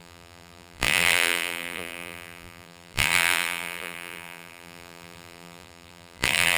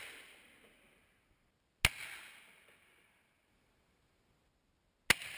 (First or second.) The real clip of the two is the second